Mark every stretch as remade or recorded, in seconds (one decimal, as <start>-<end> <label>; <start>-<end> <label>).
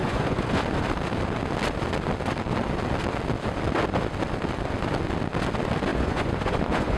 0.0-0.6 remade; 0.6-5.9 recorded; 5.9-7.0 remade